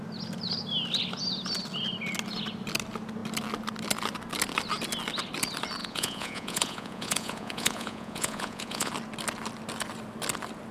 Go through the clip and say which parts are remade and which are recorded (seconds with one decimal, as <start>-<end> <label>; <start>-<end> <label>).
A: 0.0-5.8 recorded; 5.8-8.9 remade; 8.9-10.7 recorded